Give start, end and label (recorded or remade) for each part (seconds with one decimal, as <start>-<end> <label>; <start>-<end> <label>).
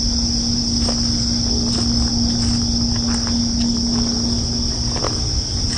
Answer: 0.0-5.8 recorded